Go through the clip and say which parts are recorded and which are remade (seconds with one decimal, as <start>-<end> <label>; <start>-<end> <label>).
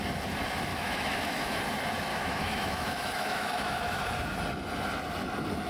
0.0-0.7 recorded; 0.7-1.6 remade; 1.6-2.1 recorded; 2.1-4.0 remade; 4.0-5.7 recorded